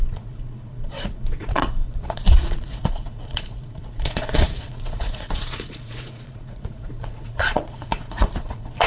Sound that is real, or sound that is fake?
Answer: fake